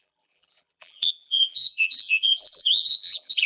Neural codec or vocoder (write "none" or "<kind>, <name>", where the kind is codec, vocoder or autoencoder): vocoder, BigVGAN v2